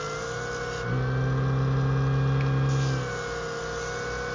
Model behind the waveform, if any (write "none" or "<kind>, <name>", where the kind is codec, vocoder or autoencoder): none